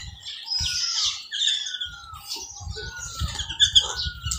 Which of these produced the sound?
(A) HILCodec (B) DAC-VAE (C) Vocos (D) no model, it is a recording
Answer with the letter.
D